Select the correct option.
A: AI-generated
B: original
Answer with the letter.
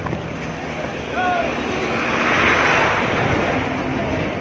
B